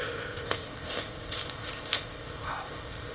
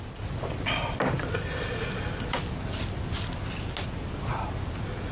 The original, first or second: second